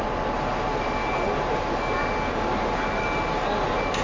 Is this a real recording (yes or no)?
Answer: yes